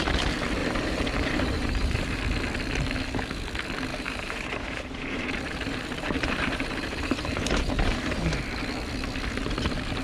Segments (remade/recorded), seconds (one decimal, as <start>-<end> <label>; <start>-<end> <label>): 0.0-0.6 recorded; 0.6-2.2 remade; 2.2-3.9 recorded; 3.9-8.4 remade; 8.4-10.0 recorded

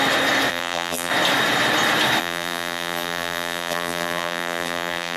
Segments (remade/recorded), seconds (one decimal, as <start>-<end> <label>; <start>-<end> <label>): 0.0-0.5 recorded; 0.5-1.1 remade; 1.1-2.2 recorded; 2.2-5.2 remade

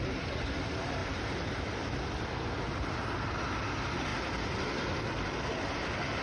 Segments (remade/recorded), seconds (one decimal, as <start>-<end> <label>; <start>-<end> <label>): 0.0-1.0 recorded; 1.0-2.0 remade; 2.0-6.2 recorded

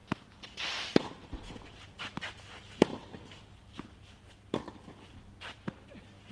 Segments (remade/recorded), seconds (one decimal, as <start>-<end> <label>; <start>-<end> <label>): 0.0-2.9 recorded; 2.9-5.4 remade; 5.4-6.3 recorded